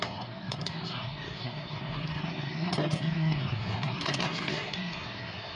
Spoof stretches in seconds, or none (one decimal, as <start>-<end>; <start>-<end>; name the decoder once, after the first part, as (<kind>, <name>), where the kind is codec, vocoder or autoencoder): 0.0-5.6 (codec, SNAC)